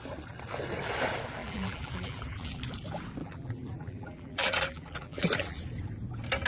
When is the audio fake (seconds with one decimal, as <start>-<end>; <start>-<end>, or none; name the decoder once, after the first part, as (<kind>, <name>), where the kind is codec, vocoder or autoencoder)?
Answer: 1.4-2.6 (vocoder, BigVGAN v2); 3.2-5.6